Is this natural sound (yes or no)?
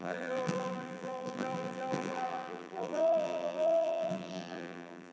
no